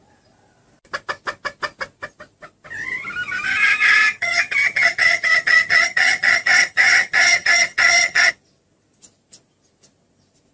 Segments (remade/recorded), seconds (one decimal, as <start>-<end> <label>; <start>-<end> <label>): 0.0-3.5 recorded; 3.5-8.3 remade; 8.3-10.5 recorded

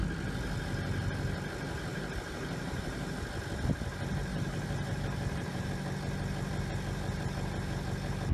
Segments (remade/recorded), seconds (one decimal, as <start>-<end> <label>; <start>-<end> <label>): 0.0-1.9 recorded; 1.9-3.2 remade; 3.2-4.3 recorded; 4.3-5.7 remade; 5.7-8.3 recorded

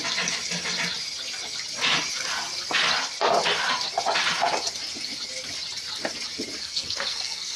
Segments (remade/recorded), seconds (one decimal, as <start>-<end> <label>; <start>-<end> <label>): 0.0-6.6 recorded; 6.6-7.6 remade

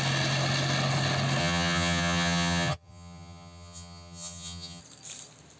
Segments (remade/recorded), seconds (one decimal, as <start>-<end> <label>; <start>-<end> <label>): 0.0-1.4 recorded; 1.4-4.8 remade; 4.8-5.6 recorded

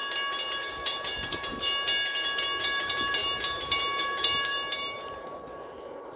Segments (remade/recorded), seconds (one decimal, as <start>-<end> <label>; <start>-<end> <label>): 0.0-0.7 recorded; 0.7-1.5 remade; 1.5-2.6 recorded; 2.6-6.2 remade

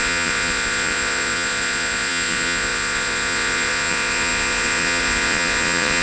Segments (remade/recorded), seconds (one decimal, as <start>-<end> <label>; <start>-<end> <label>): 0.0-6.0 remade